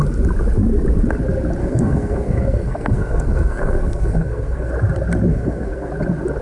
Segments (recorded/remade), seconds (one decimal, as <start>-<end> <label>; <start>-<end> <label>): 0.0-1.6 recorded; 1.6-4.7 remade; 4.7-5.3 recorded; 5.3-5.9 remade; 5.9-6.4 recorded